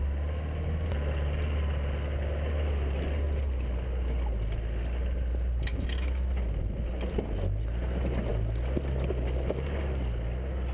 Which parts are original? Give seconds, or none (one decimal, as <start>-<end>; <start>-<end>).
0.0-10.7